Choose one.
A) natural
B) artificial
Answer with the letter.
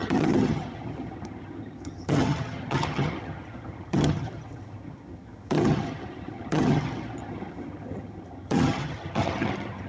B